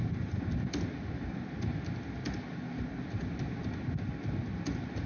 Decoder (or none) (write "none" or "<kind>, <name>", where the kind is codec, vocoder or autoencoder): none